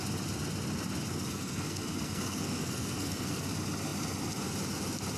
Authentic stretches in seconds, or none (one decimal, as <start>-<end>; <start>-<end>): 0.0-1.1; 3.4-5.2